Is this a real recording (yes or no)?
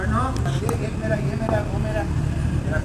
yes